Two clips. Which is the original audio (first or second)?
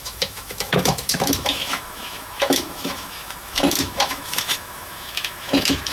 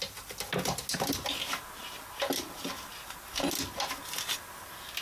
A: second